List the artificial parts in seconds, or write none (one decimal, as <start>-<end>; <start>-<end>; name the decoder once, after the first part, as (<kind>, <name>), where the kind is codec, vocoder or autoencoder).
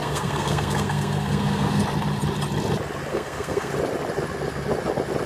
0.0-1.8 (codec, SNAC); 3.1-3.7